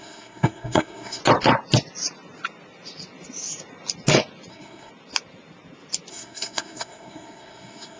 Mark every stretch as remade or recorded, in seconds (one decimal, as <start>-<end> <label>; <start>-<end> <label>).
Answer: 0.0-1.2 remade; 1.2-4.5 recorded; 4.5-4.9 remade; 4.9-6.1 recorded; 6.1-8.0 remade